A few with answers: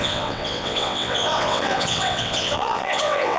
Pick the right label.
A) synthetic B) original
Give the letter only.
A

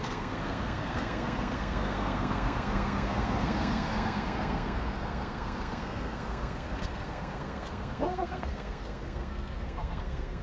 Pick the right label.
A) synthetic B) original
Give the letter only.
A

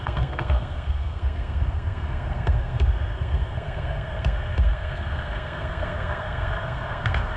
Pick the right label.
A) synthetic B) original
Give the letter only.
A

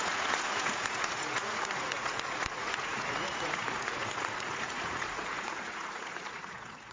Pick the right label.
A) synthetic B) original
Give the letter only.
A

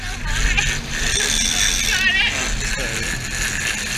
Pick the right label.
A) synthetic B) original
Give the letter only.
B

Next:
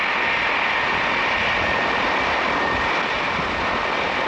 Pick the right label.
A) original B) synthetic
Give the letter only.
A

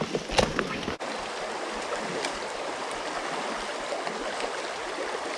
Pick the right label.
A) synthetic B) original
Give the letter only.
B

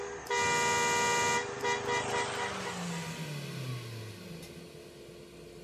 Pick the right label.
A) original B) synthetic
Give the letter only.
A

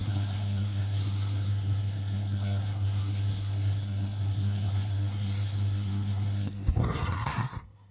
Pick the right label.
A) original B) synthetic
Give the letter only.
B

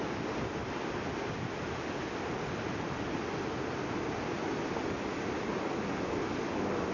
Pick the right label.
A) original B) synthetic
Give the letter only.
A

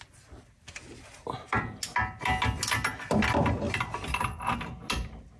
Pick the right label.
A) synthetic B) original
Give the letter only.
B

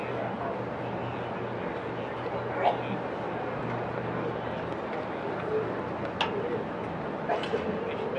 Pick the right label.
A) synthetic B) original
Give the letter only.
B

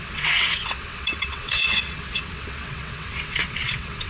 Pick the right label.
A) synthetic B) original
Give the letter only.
A